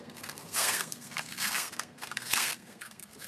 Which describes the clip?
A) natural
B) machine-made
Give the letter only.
B